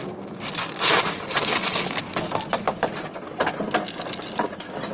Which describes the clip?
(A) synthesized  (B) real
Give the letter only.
B